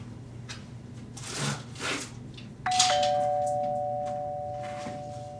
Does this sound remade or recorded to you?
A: recorded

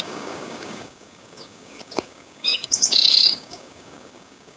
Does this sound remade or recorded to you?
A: remade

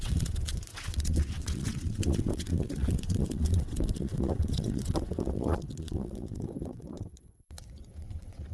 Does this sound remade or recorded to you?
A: remade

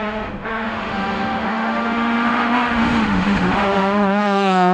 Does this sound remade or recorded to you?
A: remade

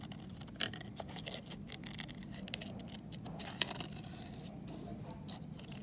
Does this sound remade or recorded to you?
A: recorded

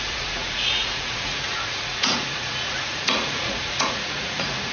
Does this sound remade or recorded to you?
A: remade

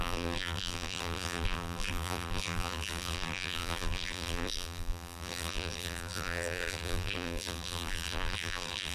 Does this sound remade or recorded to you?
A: remade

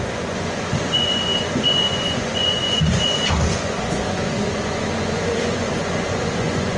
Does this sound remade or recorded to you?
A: remade